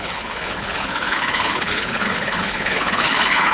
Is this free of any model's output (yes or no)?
no